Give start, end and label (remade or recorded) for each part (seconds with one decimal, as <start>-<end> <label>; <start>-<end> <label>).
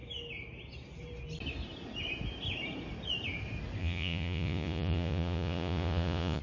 0.0-3.8 recorded; 3.8-6.4 remade